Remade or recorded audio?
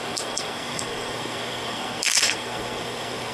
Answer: remade